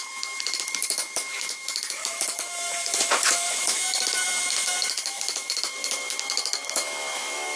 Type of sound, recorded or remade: remade